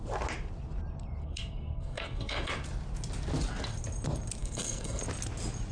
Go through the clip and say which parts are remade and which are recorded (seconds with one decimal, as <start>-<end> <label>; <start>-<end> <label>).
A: 0.0-1.2 recorded; 1.2-2.5 remade; 2.5-4.4 recorded; 4.4-5.0 remade; 5.0-5.7 recorded